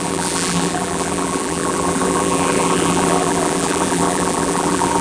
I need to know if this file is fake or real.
fake